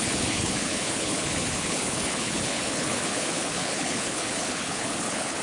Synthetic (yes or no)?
yes